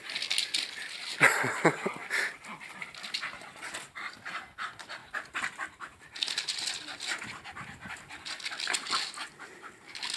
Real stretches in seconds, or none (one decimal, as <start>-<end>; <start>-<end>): 0.0-10.2